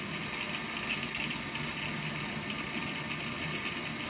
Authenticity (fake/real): real